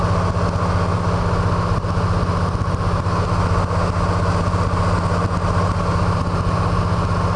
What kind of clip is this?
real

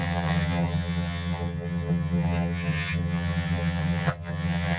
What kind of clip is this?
fake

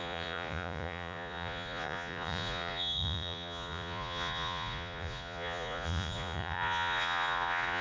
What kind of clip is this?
fake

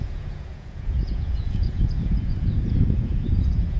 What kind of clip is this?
fake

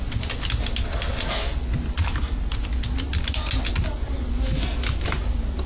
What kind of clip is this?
real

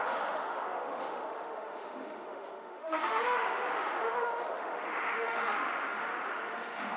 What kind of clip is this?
fake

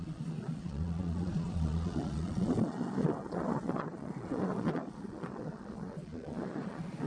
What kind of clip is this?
fake